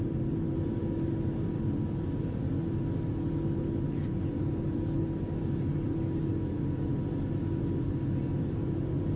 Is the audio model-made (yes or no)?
no